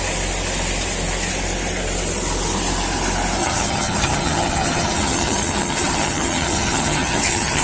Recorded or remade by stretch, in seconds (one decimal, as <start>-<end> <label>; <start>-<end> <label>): 0.0-3.4 recorded; 3.4-7.6 remade